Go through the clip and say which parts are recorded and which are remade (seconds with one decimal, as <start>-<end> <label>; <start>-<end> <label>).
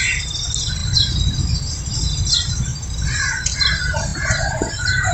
0.0-2.7 recorded; 2.7-3.2 remade; 3.2-4.1 recorded; 4.1-5.1 remade